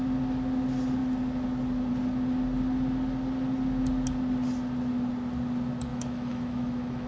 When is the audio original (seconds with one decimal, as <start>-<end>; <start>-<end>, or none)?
0.0-5.9